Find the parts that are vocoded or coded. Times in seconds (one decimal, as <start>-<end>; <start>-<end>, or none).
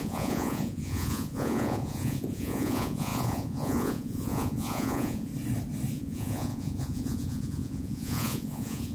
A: 0.0-5.3; 5.9-8.9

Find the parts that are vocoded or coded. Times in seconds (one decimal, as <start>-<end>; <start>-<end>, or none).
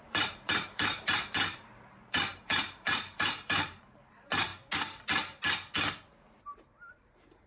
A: 0.0-4.5; 6.9-7.5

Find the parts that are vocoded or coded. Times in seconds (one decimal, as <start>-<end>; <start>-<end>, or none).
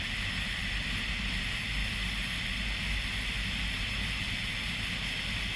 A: none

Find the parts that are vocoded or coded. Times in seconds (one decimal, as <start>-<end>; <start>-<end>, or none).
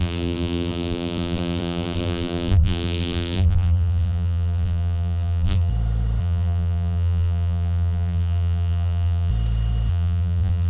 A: 0.0-5.7; 6.2-9.3; 9.9-10.7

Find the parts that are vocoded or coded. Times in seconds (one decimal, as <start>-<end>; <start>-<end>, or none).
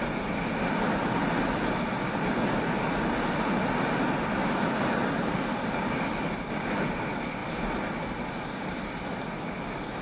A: none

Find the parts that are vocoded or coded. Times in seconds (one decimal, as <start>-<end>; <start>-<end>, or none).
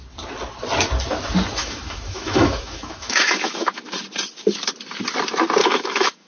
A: 1.6-3.9; 5.6-6.3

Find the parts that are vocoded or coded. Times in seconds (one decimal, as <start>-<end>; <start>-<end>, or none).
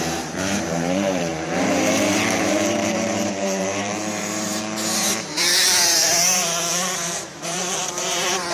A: 0.0-8.5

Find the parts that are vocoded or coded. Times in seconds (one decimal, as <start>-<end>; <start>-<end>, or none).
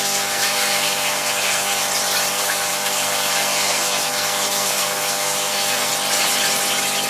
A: 0.0-1.8; 2.3-5.9